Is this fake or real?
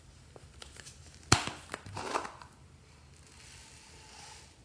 real